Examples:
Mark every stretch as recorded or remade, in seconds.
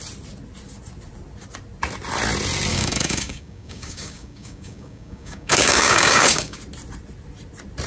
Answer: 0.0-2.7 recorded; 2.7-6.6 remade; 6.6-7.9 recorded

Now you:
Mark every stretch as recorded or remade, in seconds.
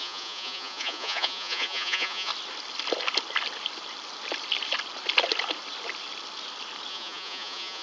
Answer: 0.0-2.3 remade; 2.3-6.9 recorded; 6.9-7.8 remade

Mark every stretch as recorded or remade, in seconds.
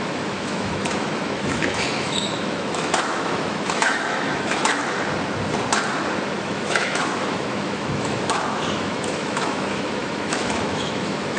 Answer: 0.0-4.8 remade; 4.8-6.4 recorded; 6.4-11.4 remade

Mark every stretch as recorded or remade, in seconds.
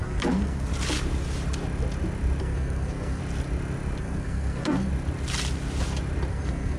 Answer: 0.0-0.7 remade; 0.7-2.4 recorded; 2.4-3.2 remade; 3.2-4.0 recorded; 4.0-4.9 remade; 4.9-6.3 recorded; 6.3-6.8 remade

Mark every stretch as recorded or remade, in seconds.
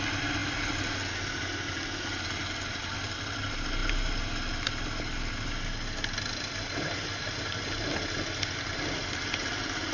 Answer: 0.0-9.9 recorded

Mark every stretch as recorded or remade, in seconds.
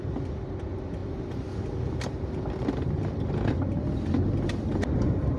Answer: 0.0-5.4 remade